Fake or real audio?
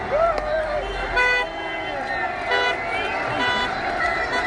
real